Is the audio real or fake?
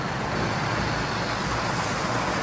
real